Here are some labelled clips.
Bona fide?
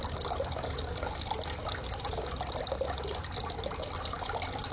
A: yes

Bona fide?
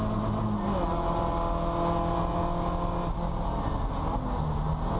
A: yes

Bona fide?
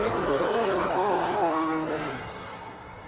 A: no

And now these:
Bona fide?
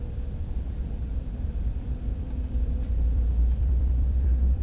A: no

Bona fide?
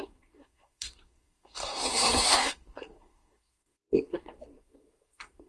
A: no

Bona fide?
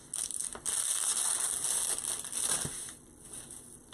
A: yes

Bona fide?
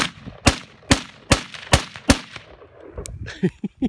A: yes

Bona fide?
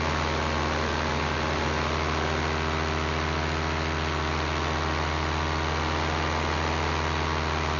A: yes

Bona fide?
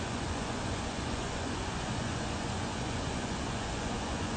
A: no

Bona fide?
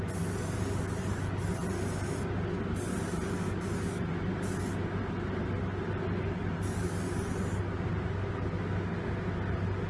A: yes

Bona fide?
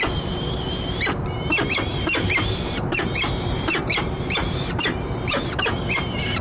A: no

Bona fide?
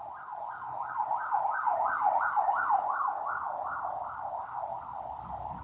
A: yes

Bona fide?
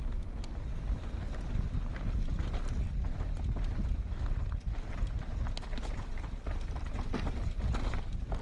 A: yes